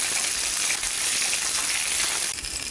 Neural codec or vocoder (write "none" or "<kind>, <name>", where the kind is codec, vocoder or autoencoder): none